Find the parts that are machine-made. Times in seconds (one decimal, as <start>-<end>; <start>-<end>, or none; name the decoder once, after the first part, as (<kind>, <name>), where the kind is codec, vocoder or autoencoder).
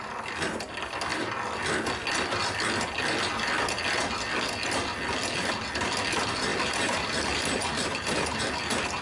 6.5-8.4 (vocoder, BigVGAN v2)